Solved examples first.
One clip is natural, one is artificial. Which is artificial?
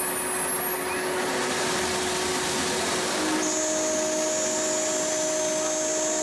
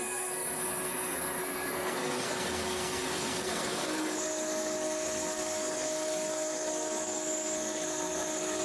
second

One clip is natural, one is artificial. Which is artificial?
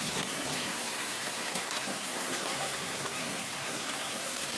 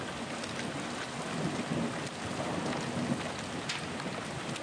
first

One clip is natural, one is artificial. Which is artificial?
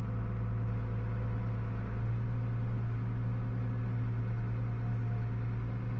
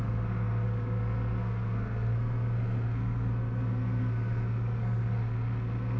second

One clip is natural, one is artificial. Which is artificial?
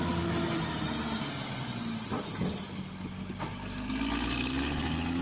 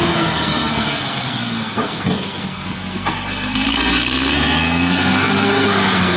second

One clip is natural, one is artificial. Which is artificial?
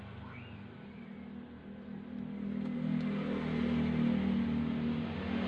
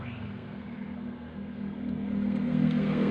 second